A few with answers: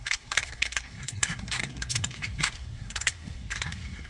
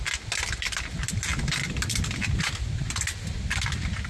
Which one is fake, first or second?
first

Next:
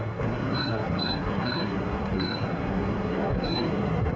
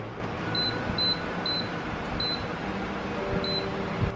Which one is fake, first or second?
first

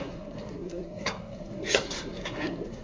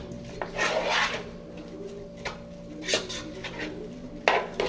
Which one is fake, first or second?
first